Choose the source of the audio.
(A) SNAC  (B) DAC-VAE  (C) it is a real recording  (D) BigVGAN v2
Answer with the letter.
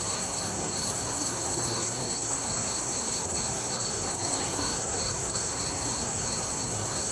A